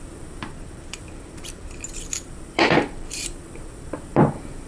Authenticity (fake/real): fake